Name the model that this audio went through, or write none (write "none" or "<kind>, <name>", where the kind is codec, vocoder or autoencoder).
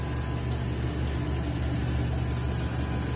none